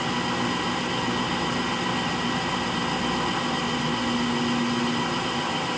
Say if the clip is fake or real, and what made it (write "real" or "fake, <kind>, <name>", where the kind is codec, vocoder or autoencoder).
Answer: real